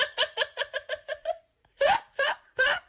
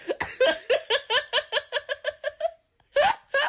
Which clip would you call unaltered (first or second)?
second